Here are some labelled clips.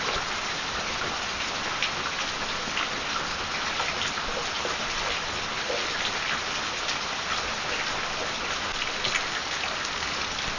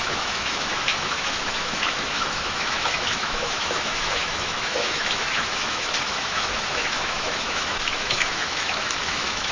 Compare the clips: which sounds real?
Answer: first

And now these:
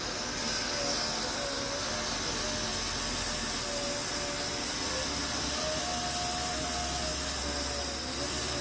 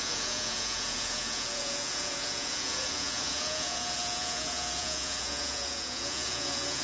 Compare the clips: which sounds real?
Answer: first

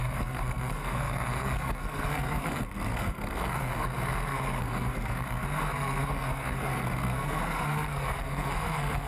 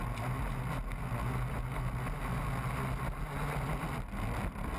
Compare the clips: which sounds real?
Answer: second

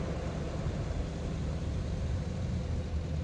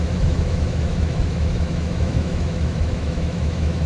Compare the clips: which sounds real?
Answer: first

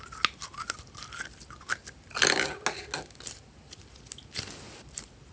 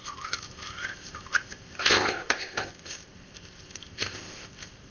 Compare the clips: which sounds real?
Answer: first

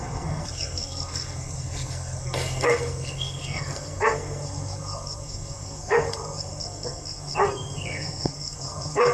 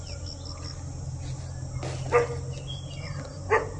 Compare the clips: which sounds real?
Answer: second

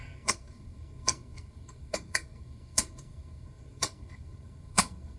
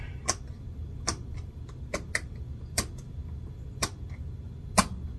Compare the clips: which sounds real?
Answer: second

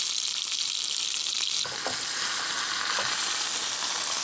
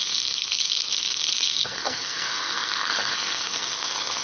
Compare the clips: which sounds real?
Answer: first